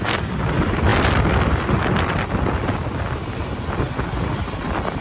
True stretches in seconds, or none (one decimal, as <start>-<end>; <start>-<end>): 0.0-5.0